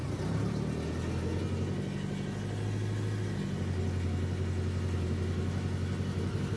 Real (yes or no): yes